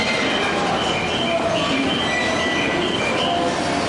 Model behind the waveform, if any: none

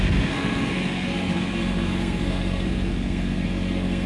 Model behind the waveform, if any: codec, SNAC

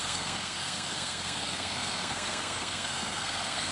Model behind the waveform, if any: codec, SNAC